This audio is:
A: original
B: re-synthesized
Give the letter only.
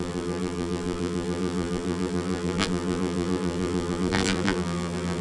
B